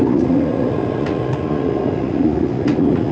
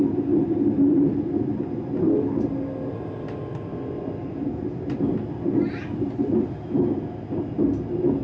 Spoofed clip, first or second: first